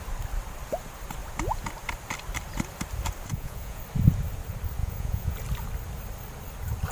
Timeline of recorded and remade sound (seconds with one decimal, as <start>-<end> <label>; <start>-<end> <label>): 0.0-3.3 recorded; 3.3-3.8 remade; 3.8-4.8 recorded; 4.8-5.3 remade; 5.3-6.9 recorded